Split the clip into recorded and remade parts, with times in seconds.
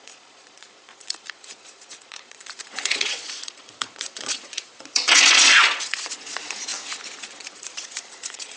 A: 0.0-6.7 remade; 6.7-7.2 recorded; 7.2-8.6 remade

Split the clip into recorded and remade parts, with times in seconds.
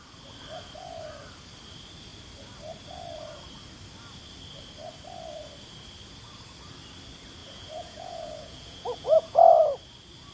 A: 0.0-7.4 recorded; 7.4-9.5 remade; 9.5-10.3 recorded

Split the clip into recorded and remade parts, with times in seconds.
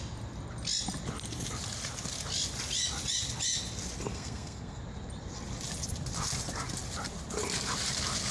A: 0.0-4.1 recorded; 4.1-4.8 remade; 4.8-8.3 recorded